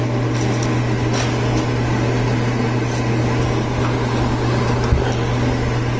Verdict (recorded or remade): recorded